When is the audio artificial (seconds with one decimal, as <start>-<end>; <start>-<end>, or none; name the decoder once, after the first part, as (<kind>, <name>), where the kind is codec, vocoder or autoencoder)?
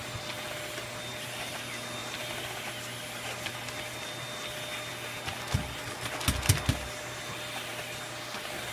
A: none